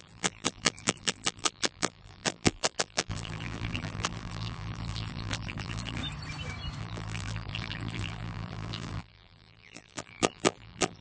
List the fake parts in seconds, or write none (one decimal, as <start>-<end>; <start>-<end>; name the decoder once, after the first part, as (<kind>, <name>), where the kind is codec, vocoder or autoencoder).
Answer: 0.0-6.0 (vocoder, BigVGAN v2); 6.8-11.0